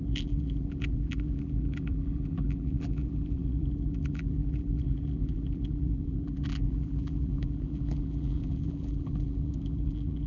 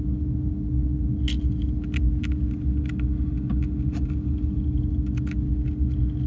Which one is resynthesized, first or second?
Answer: first